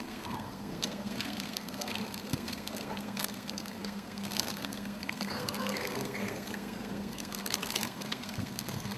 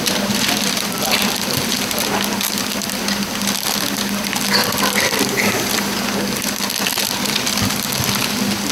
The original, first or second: second